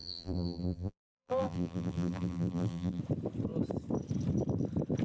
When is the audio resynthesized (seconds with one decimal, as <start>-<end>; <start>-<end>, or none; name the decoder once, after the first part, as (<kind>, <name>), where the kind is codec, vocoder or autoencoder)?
0.0-3.0 (vocoder, BigVGAN v2)